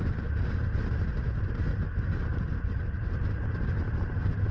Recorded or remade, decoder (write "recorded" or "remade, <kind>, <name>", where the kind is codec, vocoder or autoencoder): recorded